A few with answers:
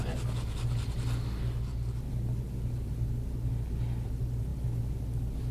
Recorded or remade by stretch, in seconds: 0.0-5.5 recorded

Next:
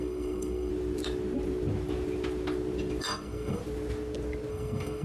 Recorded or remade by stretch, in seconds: 0.0-0.7 remade; 0.7-3.0 recorded; 3.0-3.6 remade; 3.6-4.5 recorded; 4.5-5.0 remade

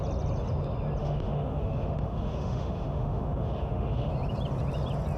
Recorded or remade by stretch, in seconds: 0.0-1.0 recorded; 1.0-4.1 remade; 4.1-5.2 recorded